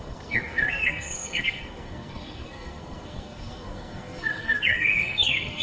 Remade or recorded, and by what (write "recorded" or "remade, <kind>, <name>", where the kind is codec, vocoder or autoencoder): remade, codec, SNAC